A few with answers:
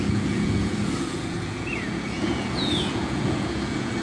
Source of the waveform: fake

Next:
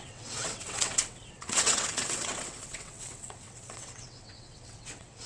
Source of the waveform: fake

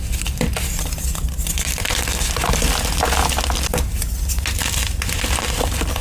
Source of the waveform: real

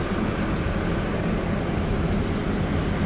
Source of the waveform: real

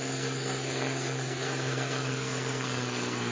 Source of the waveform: fake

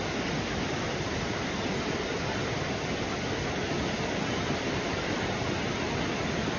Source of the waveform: real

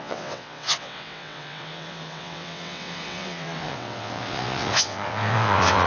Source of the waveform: fake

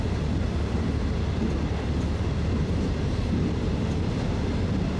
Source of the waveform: real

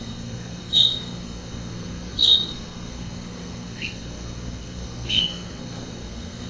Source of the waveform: fake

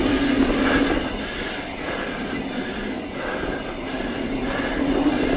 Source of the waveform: real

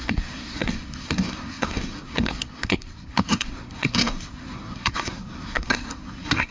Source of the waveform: fake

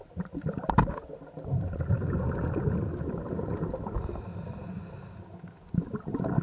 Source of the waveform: real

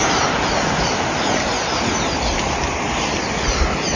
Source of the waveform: real